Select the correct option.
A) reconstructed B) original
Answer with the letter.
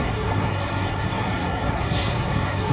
A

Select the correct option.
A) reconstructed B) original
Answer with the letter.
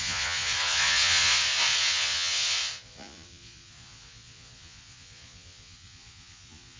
A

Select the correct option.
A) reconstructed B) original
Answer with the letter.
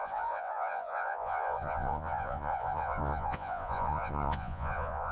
A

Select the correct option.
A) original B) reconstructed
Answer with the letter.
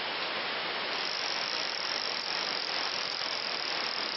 A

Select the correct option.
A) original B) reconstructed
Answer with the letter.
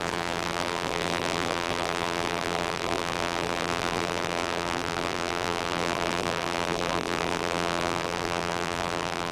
B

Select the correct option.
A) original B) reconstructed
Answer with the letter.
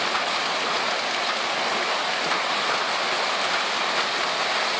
A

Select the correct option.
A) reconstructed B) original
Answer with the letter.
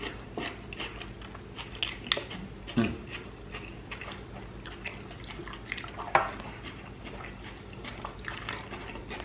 B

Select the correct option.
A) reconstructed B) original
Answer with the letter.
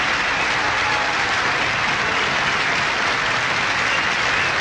B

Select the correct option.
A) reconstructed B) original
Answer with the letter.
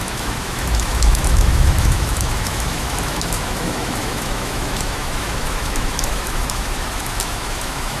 A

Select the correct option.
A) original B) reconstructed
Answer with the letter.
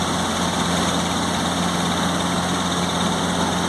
A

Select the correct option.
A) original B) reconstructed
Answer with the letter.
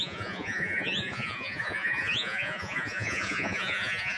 B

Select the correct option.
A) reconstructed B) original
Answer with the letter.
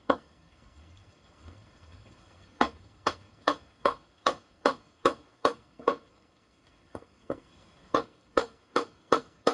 A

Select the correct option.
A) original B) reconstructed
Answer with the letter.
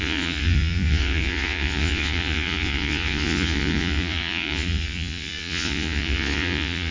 B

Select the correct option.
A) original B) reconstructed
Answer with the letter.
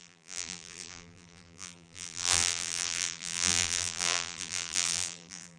B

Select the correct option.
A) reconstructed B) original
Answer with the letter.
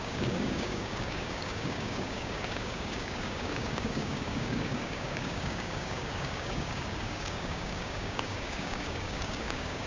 A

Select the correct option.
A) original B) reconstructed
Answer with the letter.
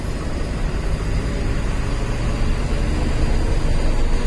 A